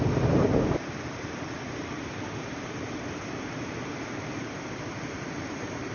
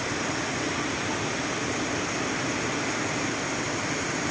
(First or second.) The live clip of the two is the second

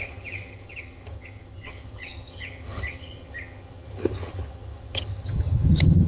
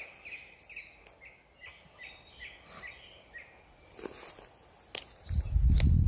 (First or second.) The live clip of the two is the second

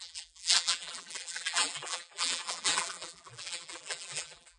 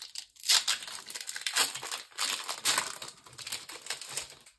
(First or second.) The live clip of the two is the second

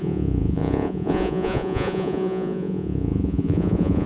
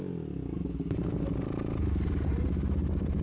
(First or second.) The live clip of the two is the second